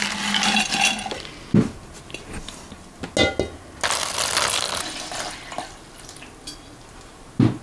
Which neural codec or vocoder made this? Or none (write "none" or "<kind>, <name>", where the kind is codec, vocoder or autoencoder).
none